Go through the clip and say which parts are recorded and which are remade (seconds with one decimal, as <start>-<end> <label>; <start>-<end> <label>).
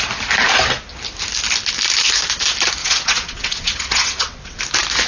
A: 0.0-2.8 recorded; 2.8-4.6 remade; 4.6-5.1 recorded